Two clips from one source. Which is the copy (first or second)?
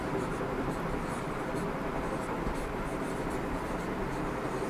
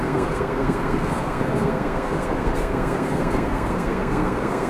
second